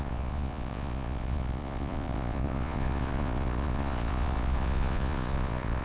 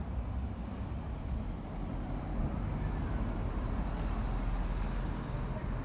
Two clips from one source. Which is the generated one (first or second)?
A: first